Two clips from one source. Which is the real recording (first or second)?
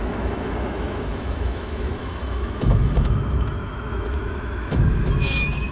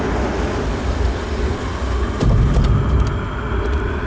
second